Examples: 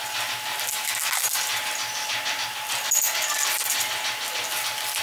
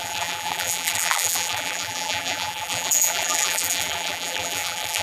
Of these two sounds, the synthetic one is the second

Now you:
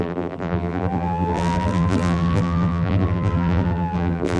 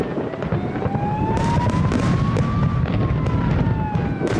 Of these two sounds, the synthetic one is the first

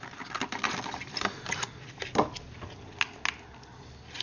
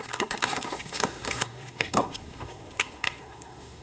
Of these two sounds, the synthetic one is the second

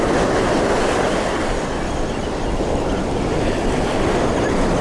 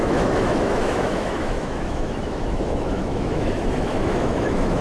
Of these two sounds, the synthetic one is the second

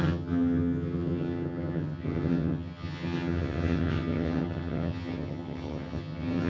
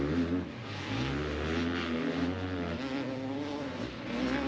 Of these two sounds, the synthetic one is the first